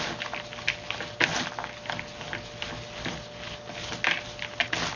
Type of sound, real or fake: real